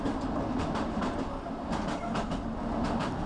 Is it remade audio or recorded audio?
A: remade